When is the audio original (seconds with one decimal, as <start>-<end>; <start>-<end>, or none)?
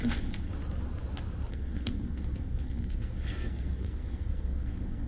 0.5-1.5